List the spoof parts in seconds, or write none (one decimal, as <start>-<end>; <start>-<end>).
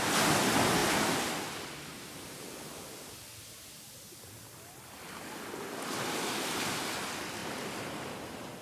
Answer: none